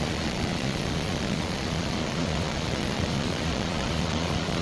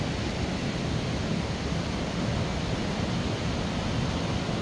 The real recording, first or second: second